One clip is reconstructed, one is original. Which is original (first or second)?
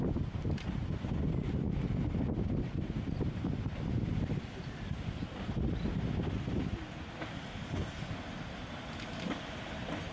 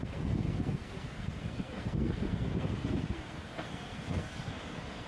first